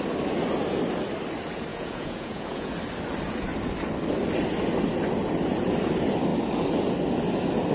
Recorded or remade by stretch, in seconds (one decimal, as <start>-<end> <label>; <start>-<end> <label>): 0.0-1.7 recorded; 1.7-2.7 remade; 2.7-7.7 recorded